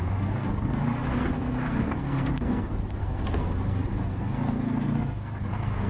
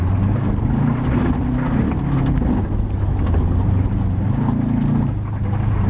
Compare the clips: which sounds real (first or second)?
second